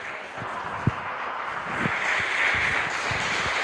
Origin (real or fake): real